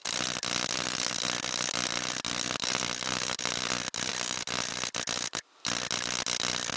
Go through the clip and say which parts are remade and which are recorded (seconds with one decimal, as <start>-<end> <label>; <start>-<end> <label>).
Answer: 0.0-6.8 recorded